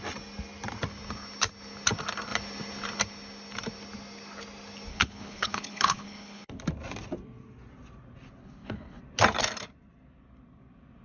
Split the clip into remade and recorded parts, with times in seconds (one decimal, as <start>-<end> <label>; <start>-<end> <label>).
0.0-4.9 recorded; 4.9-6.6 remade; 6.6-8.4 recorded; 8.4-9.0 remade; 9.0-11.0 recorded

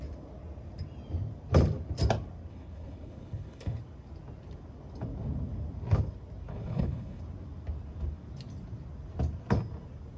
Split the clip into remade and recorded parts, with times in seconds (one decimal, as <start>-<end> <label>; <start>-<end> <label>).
0.0-2.5 recorded; 2.5-3.8 remade; 3.8-6.5 recorded; 6.5-7.2 remade; 7.2-10.2 recorded

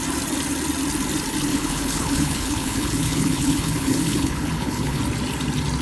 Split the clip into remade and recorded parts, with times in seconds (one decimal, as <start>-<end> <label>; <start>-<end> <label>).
0.0-1.5 recorded; 1.5-5.0 remade; 5.0-5.8 recorded

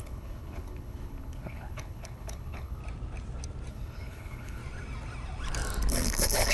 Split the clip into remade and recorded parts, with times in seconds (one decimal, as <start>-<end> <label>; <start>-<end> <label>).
0.0-2.8 remade; 2.8-3.7 recorded; 3.7-4.6 remade; 4.6-5.9 recorded; 5.9-6.5 remade